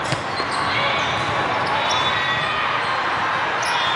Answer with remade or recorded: recorded